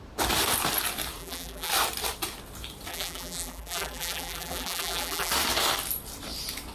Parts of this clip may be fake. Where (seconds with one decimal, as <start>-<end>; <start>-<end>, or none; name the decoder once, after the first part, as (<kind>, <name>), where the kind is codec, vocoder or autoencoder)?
1.2-1.7 (vocoder, BigVGAN v2); 2.9-5.3